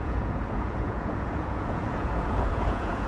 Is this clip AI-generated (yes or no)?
yes